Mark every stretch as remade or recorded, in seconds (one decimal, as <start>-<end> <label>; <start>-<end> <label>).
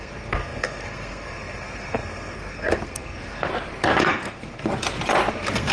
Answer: 0.0-3.5 remade; 3.5-4.0 recorded; 4.0-4.7 remade; 4.7-5.3 recorded; 5.3-5.7 remade